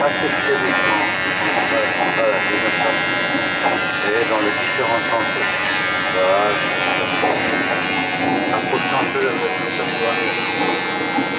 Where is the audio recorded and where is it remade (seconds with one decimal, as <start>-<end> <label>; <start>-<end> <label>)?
0.0-3.6 recorded; 3.6-5.1 remade; 5.1-11.4 recorded